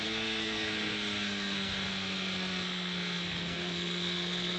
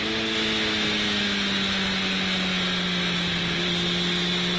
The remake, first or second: first